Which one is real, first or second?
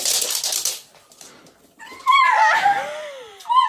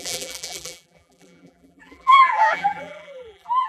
first